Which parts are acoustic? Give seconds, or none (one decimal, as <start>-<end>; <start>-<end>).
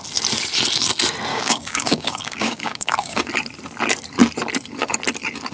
0.0-1.3; 3.3-5.5